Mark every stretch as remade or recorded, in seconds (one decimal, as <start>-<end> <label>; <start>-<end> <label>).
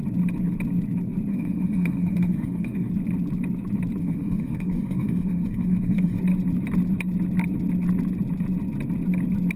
0.0-1.3 recorded; 1.3-2.9 remade; 2.9-4.0 recorded; 4.0-6.2 remade; 6.2-9.6 recorded